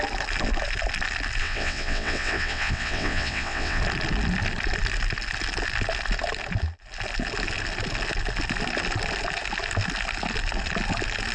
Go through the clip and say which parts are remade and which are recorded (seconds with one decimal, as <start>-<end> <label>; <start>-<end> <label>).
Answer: 0.0-1.4 recorded; 1.4-3.8 remade; 3.8-11.3 recorded

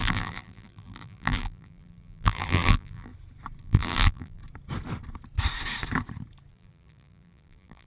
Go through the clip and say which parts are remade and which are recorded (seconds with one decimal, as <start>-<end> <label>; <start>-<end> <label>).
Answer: 0.0-3.1 remade; 3.1-3.6 recorded; 3.6-4.4 remade; 4.4-6.5 recorded; 6.5-7.9 remade

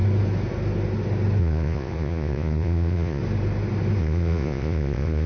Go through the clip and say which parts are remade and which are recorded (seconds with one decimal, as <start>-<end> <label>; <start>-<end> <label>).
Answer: 0.0-1.4 recorded; 1.4-3.2 remade; 3.2-4.0 recorded; 4.0-5.3 remade

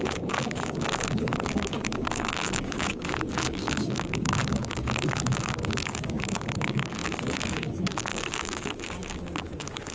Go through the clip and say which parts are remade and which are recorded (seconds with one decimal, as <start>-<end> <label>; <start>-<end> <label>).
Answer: 0.0-9.9 remade

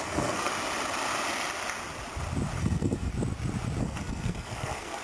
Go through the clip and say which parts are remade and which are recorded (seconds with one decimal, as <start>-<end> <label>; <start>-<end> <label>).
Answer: 0.0-0.5 remade; 0.5-2.6 recorded; 2.6-3.1 remade; 3.1-3.8 recorded; 3.8-5.0 remade

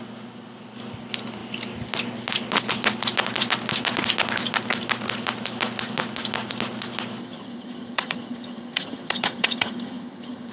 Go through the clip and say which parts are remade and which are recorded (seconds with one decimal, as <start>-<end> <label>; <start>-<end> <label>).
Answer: 0.0-7.2 recorded; 7.2-10.5 remade

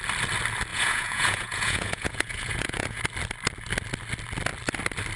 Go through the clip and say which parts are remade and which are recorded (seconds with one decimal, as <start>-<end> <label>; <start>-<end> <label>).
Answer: 0.0-0.7 recorded; 0.7-3.0 remade; 3.0-5.2 recorded

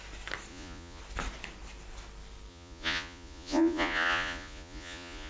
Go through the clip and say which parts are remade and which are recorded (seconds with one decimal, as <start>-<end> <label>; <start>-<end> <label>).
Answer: 0.0-0.5 recorded; 0.5-1.0 remade; 1.0-2.5 recorded; 2.5-5.3 remade